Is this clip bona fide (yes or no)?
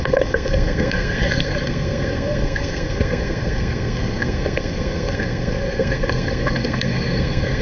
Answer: no